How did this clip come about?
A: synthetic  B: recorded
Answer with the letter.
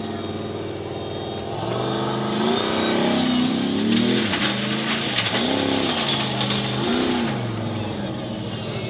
B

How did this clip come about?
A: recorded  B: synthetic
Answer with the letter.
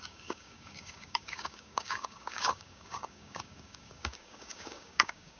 B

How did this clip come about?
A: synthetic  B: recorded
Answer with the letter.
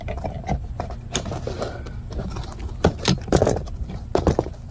B